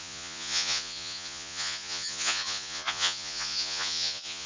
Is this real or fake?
fake